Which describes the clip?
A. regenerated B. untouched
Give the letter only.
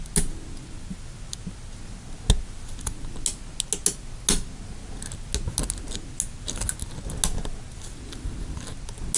B